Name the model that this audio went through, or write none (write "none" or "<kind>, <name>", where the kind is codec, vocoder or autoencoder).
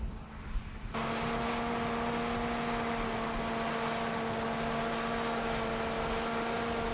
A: none